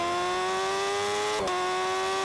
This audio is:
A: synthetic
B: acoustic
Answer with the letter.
B